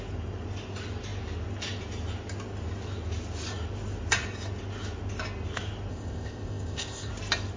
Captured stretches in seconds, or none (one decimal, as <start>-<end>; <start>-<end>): 0.0-5.9; 7.1-7.6